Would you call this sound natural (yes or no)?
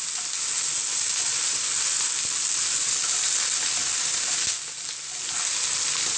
yes